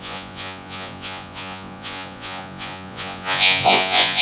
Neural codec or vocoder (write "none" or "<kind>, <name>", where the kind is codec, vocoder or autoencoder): vocoder, Vocos